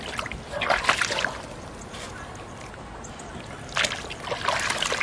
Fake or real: real